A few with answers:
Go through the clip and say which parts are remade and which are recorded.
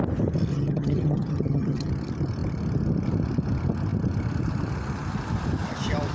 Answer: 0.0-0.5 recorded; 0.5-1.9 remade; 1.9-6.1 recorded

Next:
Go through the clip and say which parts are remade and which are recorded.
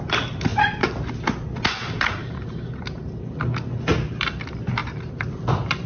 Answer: 0.0-0.5 recorded; 0.5-1.1 remade; 1.1-2.2 recorded; 2.2-3.2 remade; 3.2-4.8 recorded; 4.8-5.3 remade; 5.3-5.9 recorded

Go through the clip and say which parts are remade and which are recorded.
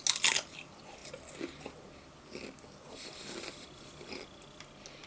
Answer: 0.0-5.1 recorded